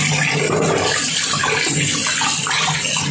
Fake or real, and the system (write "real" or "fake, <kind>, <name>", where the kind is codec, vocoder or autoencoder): real